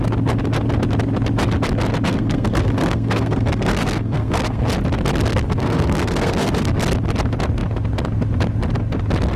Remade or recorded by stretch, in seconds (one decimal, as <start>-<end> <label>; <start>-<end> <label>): 0.0-2.1 recorded; 2.1-4.7 remade; 4.7-5.3 recorded; 5.3-6.7 remade; 6.7-9.4 recorded